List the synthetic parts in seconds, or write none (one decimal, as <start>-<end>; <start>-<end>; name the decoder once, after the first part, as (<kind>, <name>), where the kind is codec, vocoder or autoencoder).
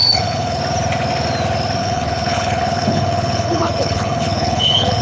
0.0-0.6 (codec, HILCodec); 1.8-5.0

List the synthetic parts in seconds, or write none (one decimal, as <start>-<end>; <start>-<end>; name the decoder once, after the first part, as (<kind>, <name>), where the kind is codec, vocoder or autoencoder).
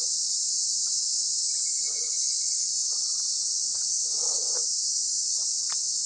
1.7-2.7 (codec, HILCodec); 3.6-4.5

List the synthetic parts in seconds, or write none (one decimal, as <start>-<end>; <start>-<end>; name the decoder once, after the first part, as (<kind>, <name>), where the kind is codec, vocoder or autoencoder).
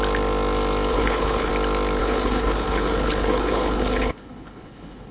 0.9-1.5 (codec, HILCodec); 2.0-5.1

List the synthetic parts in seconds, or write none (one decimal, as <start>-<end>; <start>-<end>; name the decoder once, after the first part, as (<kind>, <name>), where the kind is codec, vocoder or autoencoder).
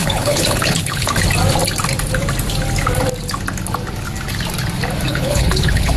0.0-1.1 (codec, HILCodec); 5.1-6.0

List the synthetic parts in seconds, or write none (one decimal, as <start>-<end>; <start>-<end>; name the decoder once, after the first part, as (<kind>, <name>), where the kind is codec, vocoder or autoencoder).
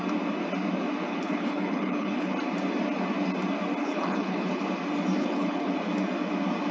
1.1-2.3 (codec, HILCodec); 3.8-4.6; 5.2-5.7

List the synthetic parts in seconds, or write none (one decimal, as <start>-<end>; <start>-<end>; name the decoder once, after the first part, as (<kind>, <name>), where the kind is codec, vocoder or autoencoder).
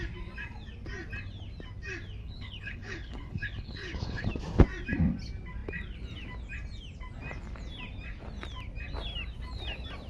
2.2-4.3 (codec, HILCodec)